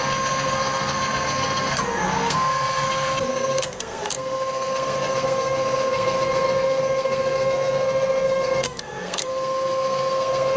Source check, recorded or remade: remade